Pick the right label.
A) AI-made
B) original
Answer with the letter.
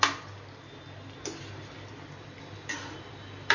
B